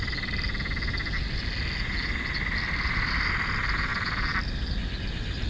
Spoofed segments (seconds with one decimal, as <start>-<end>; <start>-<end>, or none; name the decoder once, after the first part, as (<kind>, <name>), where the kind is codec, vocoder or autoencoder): none

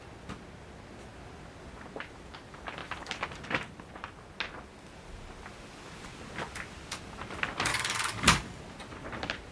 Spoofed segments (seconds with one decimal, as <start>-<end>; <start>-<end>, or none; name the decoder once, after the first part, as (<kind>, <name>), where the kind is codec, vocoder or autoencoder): 7.7-8.6 (codec, DAC)

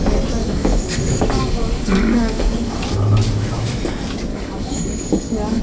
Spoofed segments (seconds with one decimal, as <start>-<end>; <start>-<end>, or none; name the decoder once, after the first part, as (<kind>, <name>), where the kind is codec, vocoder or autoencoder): 0.4-2.8 (codec, DAC); 4.3-5.6

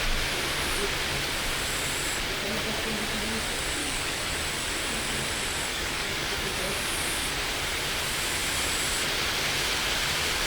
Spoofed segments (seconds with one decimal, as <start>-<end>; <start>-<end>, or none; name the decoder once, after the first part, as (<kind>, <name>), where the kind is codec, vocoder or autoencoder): 3.8-4.4 (codec, DAC); 5.7-6.6

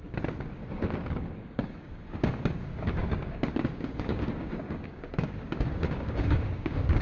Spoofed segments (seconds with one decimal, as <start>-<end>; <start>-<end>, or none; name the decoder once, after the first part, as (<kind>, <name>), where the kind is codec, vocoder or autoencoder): 0.0-7.0 (codec, DAC)